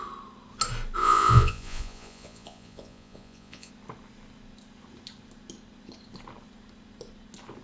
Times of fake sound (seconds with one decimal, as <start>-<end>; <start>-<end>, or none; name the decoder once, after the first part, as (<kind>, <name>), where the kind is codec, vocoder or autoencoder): 1.0-3.7 (vocoder, Vocos)